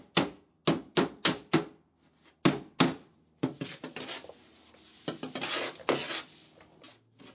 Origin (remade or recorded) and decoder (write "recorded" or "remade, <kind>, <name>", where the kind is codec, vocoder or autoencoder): recorded